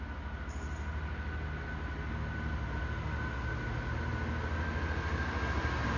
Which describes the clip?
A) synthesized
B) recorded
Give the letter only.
B